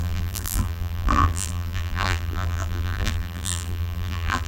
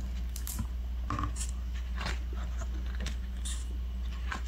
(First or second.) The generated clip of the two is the first